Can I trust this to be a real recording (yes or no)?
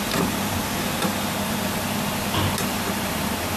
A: yes